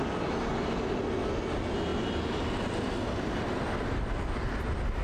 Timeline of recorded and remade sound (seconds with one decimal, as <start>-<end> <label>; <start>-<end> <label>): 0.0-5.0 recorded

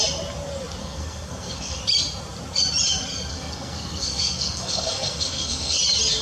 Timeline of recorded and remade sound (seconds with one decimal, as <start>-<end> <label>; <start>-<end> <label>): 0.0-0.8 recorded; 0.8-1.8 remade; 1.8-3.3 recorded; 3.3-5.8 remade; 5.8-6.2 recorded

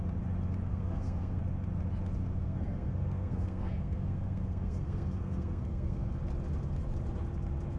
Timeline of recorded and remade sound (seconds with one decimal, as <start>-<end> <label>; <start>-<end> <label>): 0.0-0.7 recorded; 0.7-1.4 remade; 1.4-2.2 recorded; 2.2-6.2 remade; 6.2-7.8 recorded

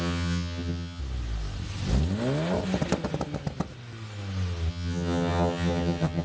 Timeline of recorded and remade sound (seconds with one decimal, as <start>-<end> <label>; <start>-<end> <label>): 0.0-1.0 remade; 1.0-4.7 recorded; 4.7-6.2 remade

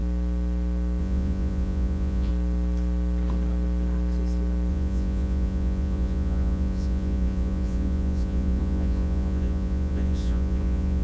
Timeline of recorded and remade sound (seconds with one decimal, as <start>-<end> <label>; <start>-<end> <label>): 0.0-1.0 recorded; 1.0-2.3 remade; 2.3-4.7 recorded; 4.7-11.0 remade

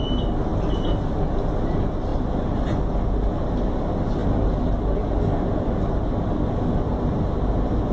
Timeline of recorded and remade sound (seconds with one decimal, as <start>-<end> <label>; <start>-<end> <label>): 0.0-7.9 recorded

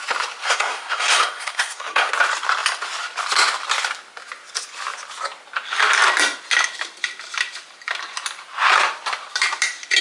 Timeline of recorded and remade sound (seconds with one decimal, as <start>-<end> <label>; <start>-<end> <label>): 0.0-0.4 recorded; 0.4-2.1 remade; 2.1-10.0 recorded